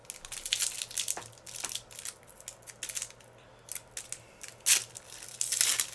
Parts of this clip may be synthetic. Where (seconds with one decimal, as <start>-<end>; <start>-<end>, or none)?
none

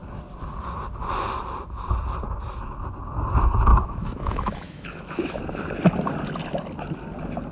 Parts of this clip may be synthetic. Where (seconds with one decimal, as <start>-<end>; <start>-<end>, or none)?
3.7-5.4

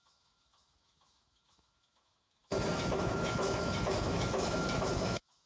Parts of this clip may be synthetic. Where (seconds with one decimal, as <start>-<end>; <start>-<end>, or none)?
0.0-5.5

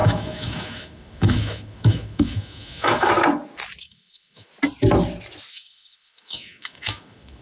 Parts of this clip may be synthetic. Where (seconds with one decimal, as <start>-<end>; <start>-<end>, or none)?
0.0-3.1; 3.8-4.5; 5.5-7.4

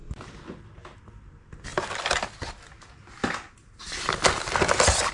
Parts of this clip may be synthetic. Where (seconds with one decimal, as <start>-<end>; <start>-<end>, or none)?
none

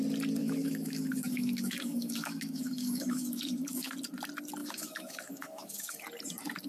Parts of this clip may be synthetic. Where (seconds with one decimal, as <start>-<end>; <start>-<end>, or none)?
0.4-3.9; 4.6-6.0

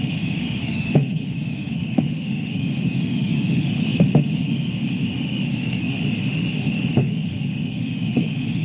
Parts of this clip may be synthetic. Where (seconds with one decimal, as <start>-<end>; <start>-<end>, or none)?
0.0-8.6

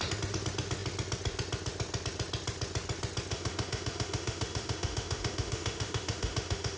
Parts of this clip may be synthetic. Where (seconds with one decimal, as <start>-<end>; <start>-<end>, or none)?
3.3-6.8